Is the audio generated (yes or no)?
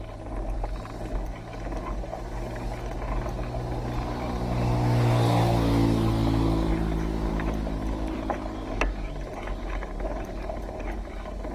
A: no